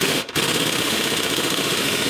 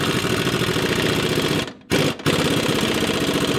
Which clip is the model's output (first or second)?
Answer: first